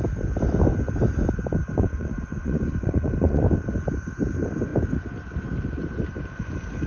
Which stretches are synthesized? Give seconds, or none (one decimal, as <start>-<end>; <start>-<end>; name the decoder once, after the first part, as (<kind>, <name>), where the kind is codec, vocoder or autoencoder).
1.6-3.4 (vocoder, Vocos)